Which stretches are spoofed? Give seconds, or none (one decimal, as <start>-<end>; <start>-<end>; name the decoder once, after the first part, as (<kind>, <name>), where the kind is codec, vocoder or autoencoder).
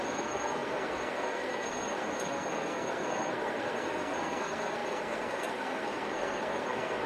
0.0-7.1 (codec, SNAC)